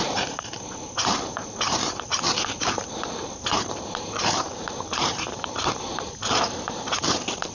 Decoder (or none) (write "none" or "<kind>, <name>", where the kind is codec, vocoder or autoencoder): vocoder, BigVGAN v2